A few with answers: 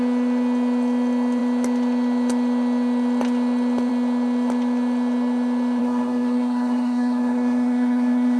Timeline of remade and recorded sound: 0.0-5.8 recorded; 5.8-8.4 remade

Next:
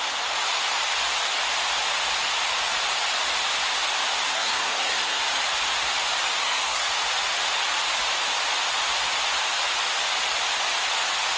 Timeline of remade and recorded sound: 0.0-4.3 recorded; 4.3-5.2 remade; 5.2-6.4 recorded; 6.4-6.9 remade; 6.9-11.4 recorded

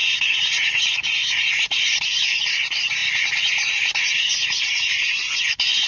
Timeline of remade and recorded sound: 0.0-5.9 recorded

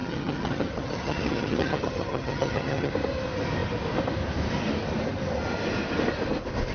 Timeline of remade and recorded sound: 0.0-2.9 remade; 2.9-6.7 recorded